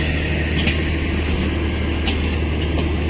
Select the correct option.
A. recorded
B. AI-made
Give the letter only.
A